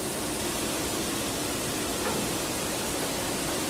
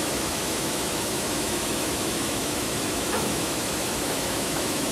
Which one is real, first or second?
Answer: first